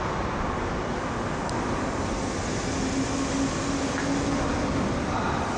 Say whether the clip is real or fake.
real